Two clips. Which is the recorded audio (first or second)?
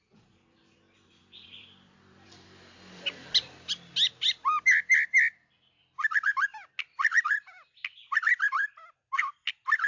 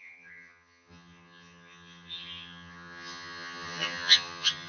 first